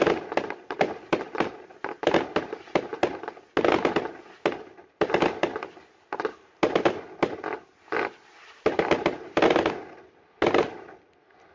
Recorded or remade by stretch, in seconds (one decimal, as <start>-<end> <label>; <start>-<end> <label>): 0.0-11.5 recorded